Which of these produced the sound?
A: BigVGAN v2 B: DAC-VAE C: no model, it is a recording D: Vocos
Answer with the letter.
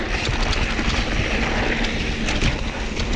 C